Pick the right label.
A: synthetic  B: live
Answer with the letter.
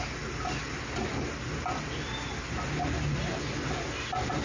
B